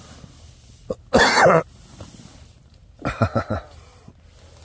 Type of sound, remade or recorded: recorded